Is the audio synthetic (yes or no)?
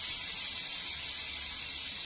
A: no